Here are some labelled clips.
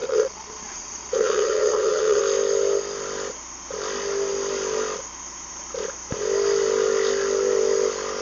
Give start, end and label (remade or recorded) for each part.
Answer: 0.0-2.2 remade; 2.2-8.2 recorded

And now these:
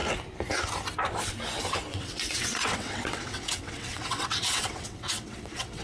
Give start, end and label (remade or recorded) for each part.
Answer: 0.0-1.9 recorded; 1.9-5.8 remade

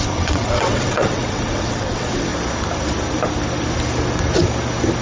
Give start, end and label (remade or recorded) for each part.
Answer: 0.0-2.3 remade; 2.3-5.0 recorded

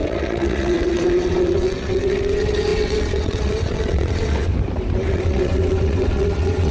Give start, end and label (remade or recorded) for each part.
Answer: 0.0-4.5 remade; 4.5-5.1 recorded; 5.1-6.7 remade

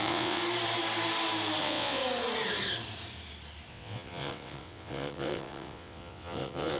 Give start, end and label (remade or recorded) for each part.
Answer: 0.0-0.4 remade; 0.4-1.6 recorded; 1.6-2.0 remade; 2.0-3.7 recorded; 3.7-6.8 remade